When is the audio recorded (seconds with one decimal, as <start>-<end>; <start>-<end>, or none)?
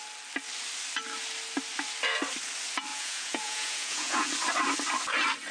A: 0.0-2.9; 4.3-5.5